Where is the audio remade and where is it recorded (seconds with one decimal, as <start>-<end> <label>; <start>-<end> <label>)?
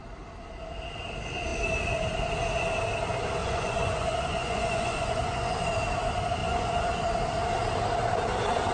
0.0-3.4 recorded; 3.4-5.5 remade; 5.5-6.4 recorded; 6.4-7.0 remade; 7.0-8.7 recorded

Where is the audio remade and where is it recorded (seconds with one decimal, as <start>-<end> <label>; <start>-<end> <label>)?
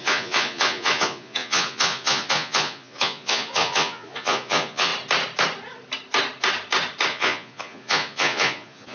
0.0-4.9 remade; 4.9-7.1 recorded; 7.1-8.9 remade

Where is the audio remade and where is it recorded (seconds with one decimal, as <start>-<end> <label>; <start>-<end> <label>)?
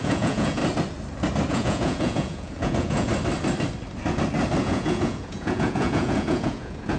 0.0-0.6 remade; 0.6-1.5 recorded; 1.5-3.1 remade; 3.1-4.6 recorded; 4.6-7.0 remade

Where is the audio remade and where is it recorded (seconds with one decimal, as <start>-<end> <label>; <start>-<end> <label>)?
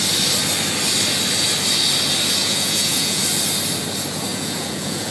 0.0-2.4 recorded; 2.4-3.2 remade; 3.2-4.3 recorded; 4.3-5.1 remade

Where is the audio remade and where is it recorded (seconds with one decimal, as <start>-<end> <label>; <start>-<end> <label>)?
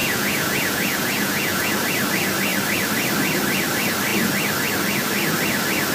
0.0-1.7 remade; 1.7-5.9 recorded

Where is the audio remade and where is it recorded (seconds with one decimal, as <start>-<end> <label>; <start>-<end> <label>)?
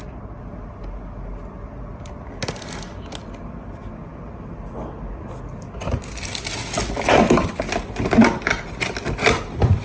0.0-9.8 recorded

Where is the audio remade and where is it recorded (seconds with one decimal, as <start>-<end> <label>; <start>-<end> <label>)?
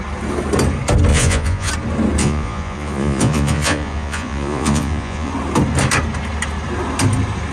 0.0-1.1 recorded; 1.1-1.7 remade; 1.7-2.2 recorded; 2.2-5.3 remade; 5.3-7.5 recorded